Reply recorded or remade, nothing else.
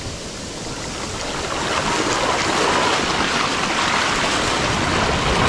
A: recorded